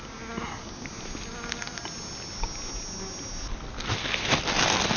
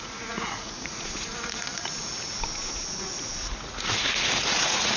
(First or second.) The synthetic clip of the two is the second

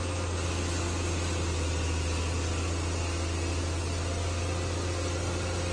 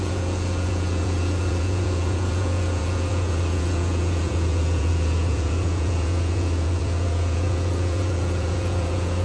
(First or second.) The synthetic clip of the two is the second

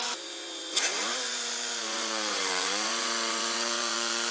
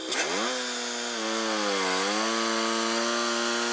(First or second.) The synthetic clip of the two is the first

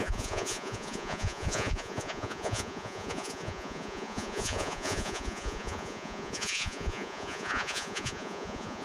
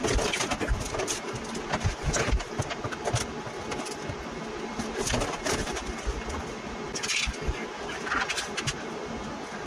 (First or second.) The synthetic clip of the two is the first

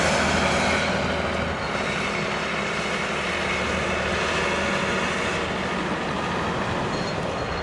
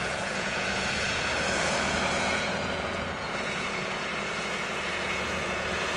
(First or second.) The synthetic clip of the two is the second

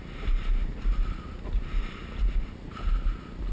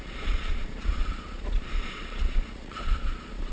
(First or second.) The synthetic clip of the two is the second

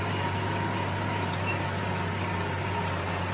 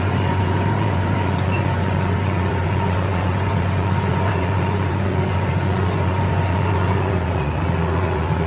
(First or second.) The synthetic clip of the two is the second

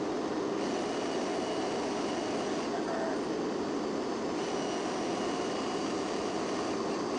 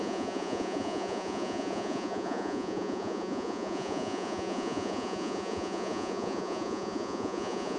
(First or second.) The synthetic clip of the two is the second